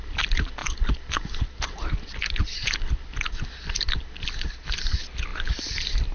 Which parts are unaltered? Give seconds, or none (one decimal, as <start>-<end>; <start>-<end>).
0.0-6.1